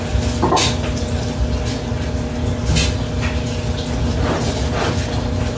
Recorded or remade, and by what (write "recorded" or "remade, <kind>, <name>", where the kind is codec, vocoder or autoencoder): recorded